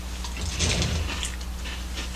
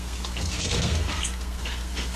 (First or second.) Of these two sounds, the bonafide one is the first